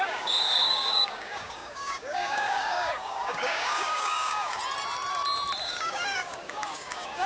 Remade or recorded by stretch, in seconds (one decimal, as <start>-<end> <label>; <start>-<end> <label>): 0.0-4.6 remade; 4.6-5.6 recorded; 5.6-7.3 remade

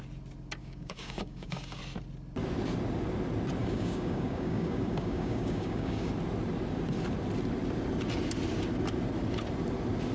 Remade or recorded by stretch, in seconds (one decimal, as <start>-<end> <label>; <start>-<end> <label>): 0.0-0.6 recorded; 0.6-1.8 remade; 1.8-3.6 recorded; 3.6-6.1 remade; 6.1-10.1 recorded

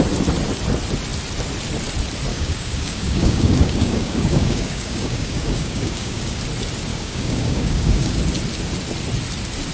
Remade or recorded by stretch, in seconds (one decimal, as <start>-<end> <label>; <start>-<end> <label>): 0.0-2.3 recorded; 2.3-6.4 remade; 6.4-6.9 recorded; 6.9-8.2 remade; 8.2-9.7 recorded